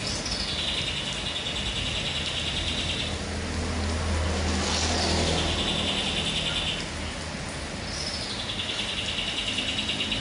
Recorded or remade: recorded